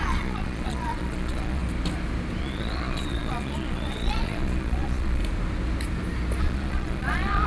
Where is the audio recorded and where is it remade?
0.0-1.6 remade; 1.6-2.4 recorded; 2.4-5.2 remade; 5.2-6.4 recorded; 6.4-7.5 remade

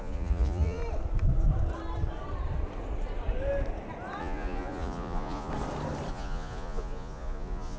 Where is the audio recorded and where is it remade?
0.0-0.8 remade; 0.8-4.2 recorded; 4.2-5.5 remade; 5.5-6.1 recorded; 6.1-7.8 remade

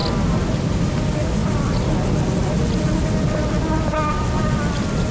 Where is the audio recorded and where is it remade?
0.0-5.1 recorded